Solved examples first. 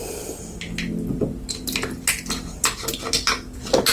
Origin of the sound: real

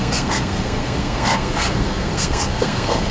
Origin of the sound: fake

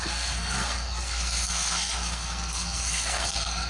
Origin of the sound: fake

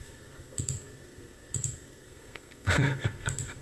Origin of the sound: fake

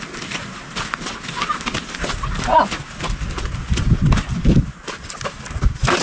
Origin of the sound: real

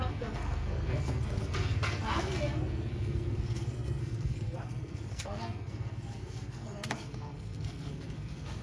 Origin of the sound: fake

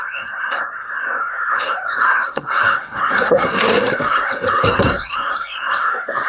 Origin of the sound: fake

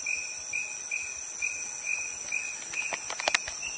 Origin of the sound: real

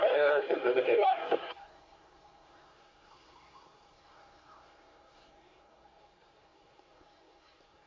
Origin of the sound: fake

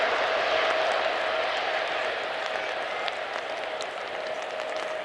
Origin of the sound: real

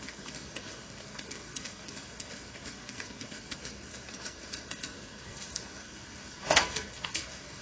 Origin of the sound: fake